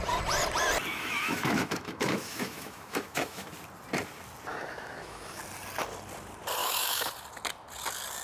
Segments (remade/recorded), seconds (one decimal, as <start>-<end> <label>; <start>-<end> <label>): 0.0-0.9 recorded; 0.9-3.5 remade; 3.5-4.5 recorded; 4.5-5.4 remade; 5.4-6.6 recorded; 6.6-7.1 remade; 7.1-8.2 recorded